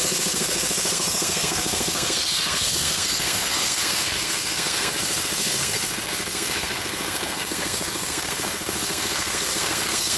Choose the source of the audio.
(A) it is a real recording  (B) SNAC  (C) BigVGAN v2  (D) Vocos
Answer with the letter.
B